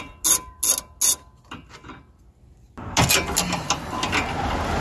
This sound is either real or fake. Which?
real